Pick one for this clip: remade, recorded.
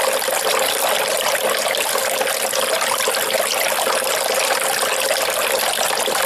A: recorded